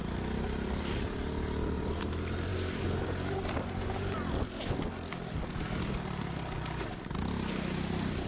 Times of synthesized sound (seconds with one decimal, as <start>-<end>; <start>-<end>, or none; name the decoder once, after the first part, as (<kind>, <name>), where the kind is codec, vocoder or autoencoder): none